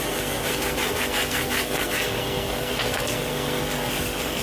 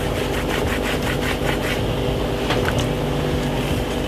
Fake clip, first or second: first